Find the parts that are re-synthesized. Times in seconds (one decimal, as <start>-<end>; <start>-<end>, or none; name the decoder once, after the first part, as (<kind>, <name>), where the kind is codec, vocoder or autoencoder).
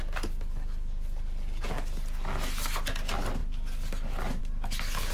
none